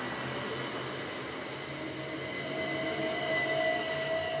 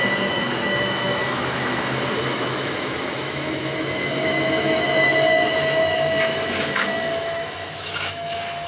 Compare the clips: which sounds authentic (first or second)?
first